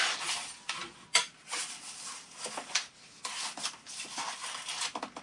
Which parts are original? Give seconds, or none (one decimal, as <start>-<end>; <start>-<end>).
0.0-5.2